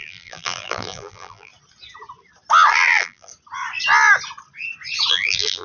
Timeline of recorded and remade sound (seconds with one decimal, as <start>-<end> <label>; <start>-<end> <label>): 0.0-1.5 remade; 1.5-2.7 recorded; 2.7-3.3 remade; 3.3-5.1 recorded; 5.1-5.6 remade